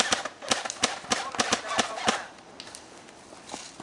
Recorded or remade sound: recorded